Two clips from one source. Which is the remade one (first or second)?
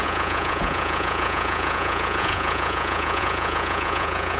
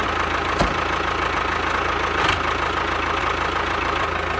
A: first